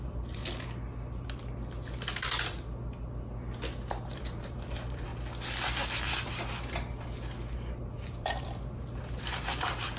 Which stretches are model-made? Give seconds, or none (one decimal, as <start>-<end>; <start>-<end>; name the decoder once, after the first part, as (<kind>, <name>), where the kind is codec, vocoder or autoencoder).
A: 0.0-0.4 (vocoder, BigVGAN v2); 3.9-5.1; 7.5-10.0